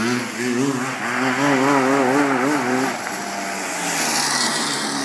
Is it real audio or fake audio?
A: real